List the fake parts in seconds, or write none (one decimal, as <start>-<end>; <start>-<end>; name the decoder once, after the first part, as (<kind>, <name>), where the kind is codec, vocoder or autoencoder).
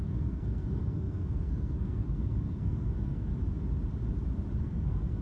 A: 0.0-3.3 (codec, SNAC); 4.6-5.2